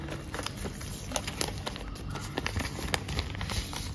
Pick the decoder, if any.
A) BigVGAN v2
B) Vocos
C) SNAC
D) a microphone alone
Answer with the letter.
D